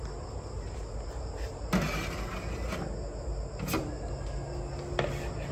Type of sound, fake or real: real